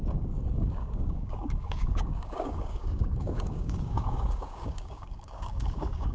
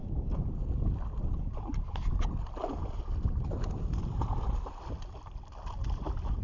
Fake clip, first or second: first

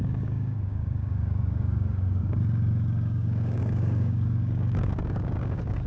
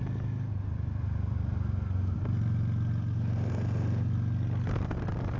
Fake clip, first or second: first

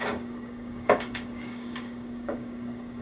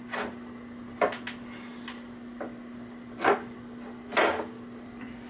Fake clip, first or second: first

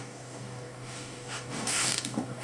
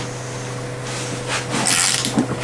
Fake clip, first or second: first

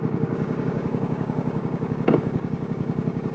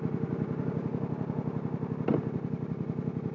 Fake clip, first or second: first